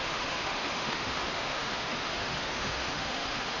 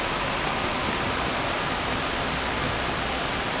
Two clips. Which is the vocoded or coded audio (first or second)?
first